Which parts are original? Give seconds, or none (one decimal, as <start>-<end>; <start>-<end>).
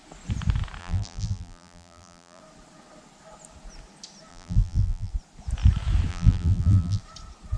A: 0.0-0.8; 2.4-4.3; 5.1-6.1; 7.0-7.6